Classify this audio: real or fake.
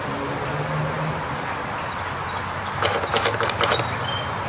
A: real